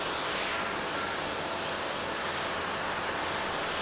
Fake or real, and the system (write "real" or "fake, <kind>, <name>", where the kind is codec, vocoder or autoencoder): real